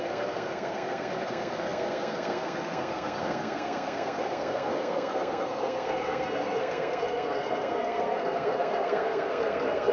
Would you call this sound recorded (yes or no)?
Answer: no